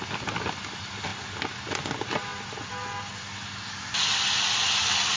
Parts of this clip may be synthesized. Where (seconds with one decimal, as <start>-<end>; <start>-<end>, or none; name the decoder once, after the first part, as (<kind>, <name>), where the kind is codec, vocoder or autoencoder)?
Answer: none